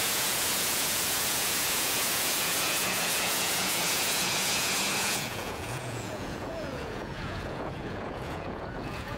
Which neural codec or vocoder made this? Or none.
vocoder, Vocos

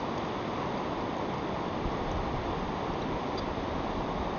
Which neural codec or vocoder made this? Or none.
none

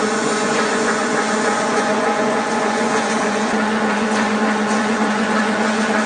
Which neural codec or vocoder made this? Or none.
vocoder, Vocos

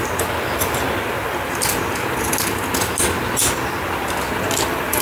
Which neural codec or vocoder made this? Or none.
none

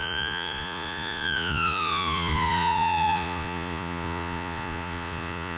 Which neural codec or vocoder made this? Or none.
vocoder, Vocos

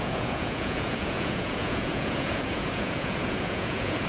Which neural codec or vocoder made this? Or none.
vocoder, Vocos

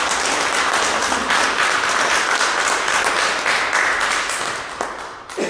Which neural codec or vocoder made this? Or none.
none